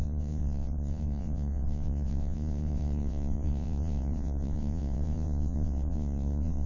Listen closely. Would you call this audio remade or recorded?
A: remade